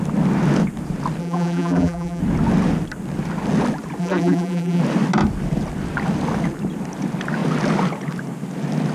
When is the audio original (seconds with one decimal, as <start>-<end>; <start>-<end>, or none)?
0.0-1.2; 2.2-4.0; 4.8-8.9